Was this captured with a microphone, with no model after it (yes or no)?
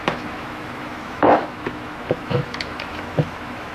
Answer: no